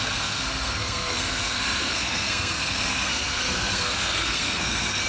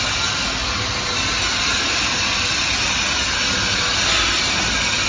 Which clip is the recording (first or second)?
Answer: second